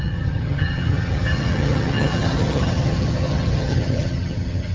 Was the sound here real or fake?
fake